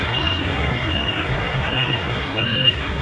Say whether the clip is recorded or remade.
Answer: remade